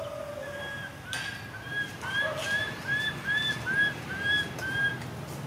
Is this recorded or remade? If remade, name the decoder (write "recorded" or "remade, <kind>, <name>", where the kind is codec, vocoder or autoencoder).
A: recorded